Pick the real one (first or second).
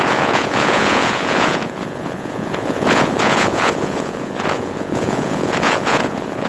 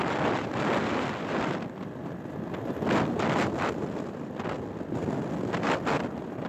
second